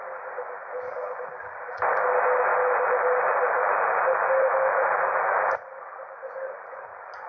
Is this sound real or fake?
real